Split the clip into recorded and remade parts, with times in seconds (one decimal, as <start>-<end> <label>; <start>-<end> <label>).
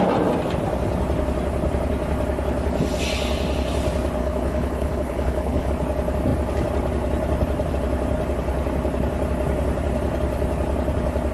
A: 0.0-4.2 recorded; 4.2-5.7 remade; 5.7-11.3 recorded